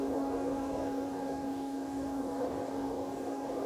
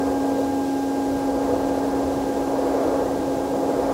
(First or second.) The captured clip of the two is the second